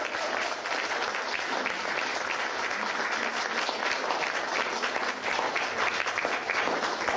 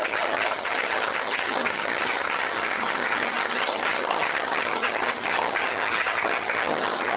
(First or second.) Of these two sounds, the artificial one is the second